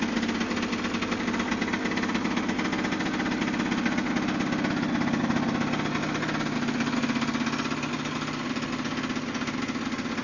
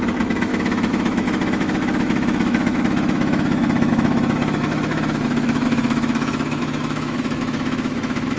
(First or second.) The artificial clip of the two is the second